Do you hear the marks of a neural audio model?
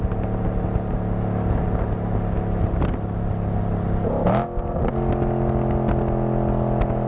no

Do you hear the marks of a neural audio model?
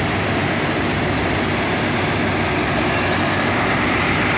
no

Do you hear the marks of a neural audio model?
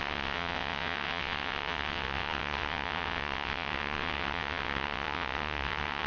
yes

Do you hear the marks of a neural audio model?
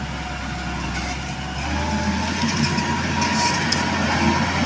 no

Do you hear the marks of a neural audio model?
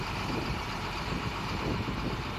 yes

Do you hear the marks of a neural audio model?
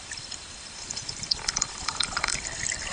yes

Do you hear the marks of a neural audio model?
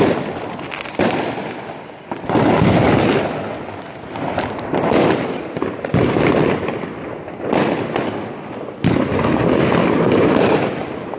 no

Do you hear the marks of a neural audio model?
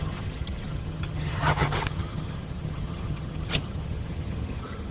yes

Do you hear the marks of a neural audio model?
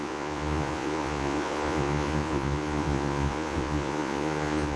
yes